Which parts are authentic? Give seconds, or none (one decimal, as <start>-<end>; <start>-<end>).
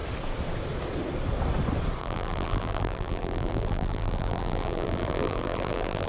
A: 0.0-2.0